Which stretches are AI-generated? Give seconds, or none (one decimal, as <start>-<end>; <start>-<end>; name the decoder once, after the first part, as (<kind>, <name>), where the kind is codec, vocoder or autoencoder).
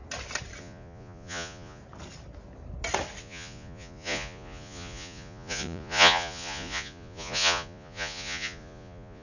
0.6-1.8 (vocoder, Vocos); 3.2-9.2